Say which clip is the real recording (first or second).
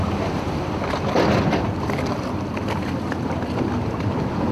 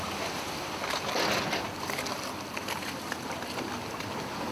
second